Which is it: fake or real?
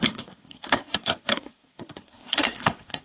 fake